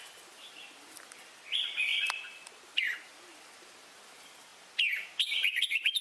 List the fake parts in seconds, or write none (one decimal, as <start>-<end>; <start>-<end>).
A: 0.0-1.9; 3.1-6.0